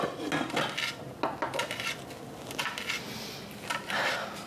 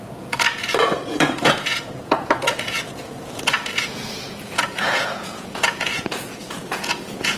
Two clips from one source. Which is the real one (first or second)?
first